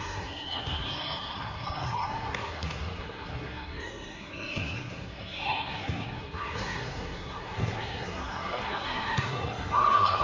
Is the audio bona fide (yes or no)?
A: no